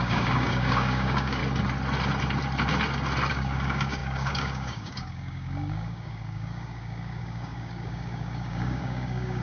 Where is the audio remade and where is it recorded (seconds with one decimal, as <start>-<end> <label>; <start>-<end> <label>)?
0.0-1.4 remade; 1.4-3.3 recorded; 3.3-9.4 remade